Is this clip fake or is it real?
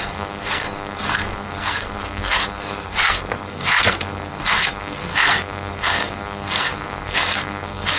fake